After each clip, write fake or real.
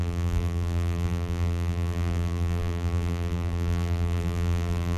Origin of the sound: fake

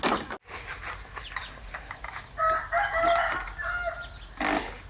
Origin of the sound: real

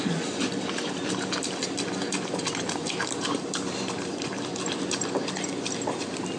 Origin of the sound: fake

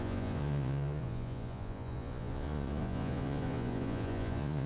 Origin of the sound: fake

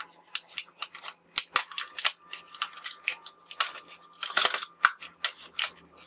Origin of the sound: real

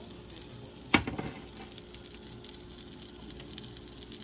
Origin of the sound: real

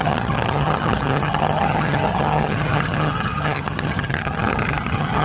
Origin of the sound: fake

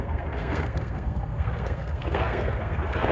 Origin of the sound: fake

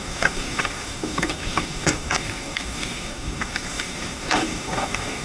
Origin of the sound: fake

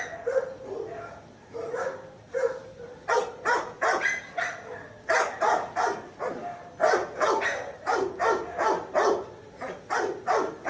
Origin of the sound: real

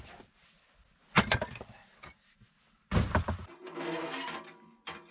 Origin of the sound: real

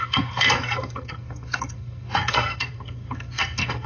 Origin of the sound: fake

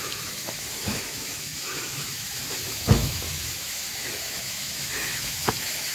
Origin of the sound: fake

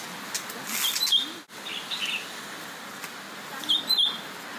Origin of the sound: real